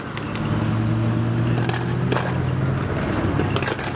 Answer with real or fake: real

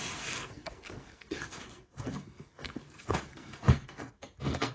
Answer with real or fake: fake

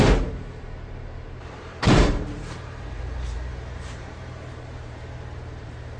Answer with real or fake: fake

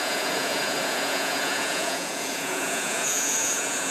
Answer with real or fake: fake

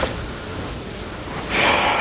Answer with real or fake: real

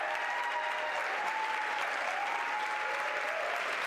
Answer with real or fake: real